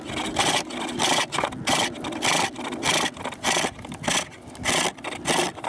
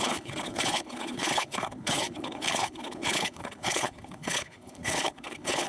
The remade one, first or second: second